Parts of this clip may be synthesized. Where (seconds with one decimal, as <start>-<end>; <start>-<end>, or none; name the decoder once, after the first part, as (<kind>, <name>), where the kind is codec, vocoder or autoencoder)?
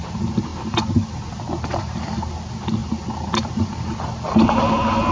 none